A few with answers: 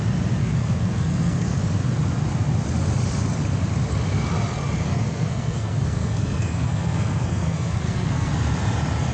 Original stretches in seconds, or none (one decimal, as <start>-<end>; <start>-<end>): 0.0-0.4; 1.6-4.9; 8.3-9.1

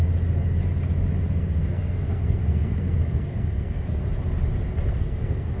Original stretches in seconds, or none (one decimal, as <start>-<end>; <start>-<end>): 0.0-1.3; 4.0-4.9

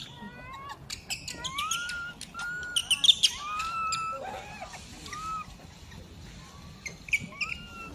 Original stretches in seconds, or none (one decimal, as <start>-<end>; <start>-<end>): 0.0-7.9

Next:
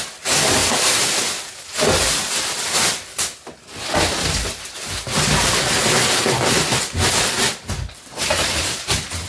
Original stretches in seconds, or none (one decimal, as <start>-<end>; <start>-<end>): 0.0-9.3

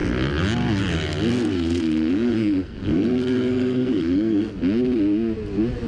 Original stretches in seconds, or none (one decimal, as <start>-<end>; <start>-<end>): 0.0-1.3; 4.6-5.9

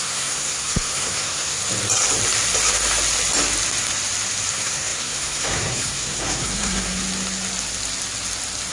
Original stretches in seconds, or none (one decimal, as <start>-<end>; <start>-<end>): 1.6-4.5; 7.0-8.7

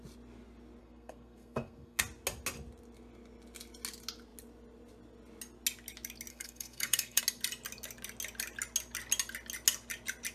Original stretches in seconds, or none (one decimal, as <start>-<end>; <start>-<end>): 0.0-0.8; 2.0-6.3; 7.2-10.3

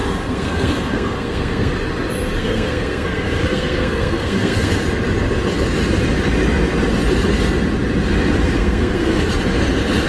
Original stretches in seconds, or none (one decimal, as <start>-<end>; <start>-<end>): 1.7-2.4; 4.7-8.6; 9.3-10.1